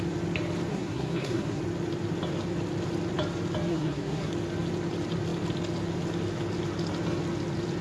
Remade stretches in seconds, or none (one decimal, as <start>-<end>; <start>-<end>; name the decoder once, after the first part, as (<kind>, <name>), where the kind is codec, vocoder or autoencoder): 0.7-1.6 (codec, SNAC); 3.7-4.3